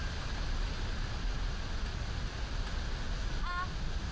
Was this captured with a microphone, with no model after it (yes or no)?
yes